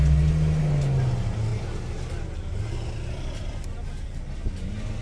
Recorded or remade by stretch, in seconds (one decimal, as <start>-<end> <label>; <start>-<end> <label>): 0.0-5.0 recorded